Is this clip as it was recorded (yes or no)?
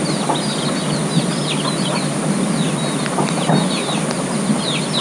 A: yes